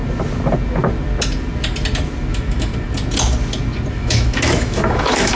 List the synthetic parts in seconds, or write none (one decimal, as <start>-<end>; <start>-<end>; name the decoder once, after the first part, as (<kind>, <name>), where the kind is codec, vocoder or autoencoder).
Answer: 2.3-2.7 (autoencoder, DAC-VAE); 3.9-5.4